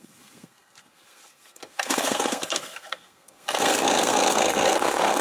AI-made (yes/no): yes